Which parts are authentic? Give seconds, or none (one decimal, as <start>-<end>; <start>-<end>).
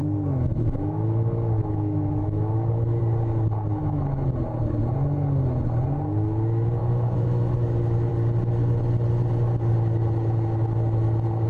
3.0-3.8; 4.3-6.8; 8.1-11.5